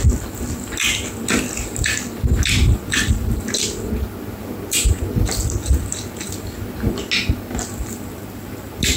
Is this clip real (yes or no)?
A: yes